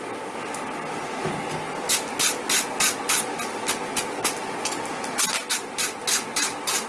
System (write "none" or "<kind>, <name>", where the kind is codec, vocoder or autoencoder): none